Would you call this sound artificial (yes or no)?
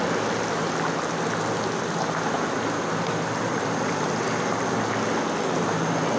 no